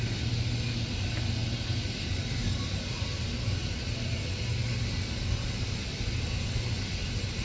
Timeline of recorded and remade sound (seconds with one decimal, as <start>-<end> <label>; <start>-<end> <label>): 0.0-7.4 recorded